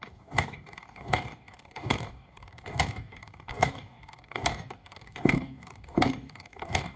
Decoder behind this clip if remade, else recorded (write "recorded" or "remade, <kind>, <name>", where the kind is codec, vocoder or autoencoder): remade, codec, DAC